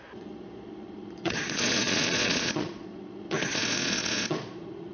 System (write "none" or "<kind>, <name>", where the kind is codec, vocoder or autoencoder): vocoder, Vocos